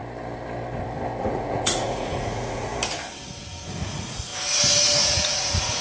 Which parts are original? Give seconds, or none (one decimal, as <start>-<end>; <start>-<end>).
0.0-1.2; 2.7-3.7; 4.3-5.0